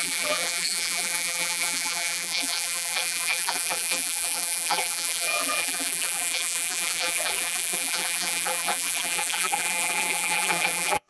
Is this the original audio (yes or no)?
no